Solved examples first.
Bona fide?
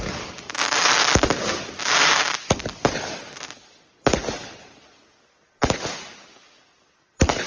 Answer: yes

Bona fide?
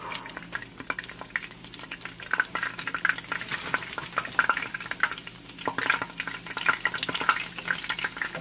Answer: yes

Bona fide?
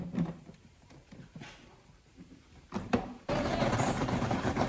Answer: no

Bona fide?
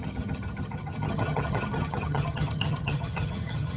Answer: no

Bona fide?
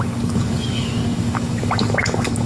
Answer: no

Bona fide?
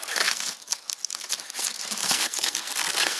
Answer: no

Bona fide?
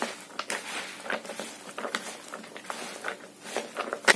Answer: yes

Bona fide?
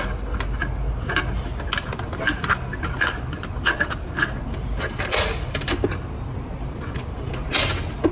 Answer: yes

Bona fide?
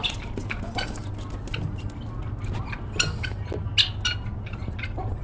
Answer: yes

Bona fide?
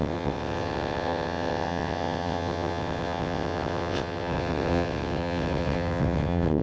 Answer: no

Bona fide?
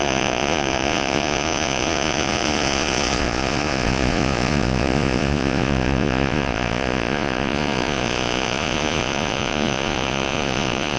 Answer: no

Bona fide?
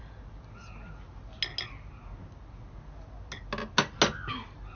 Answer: yes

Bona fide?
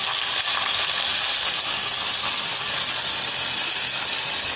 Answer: yes